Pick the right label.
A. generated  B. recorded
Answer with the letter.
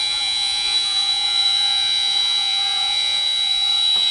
A